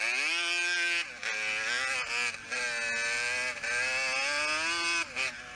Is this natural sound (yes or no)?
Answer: yes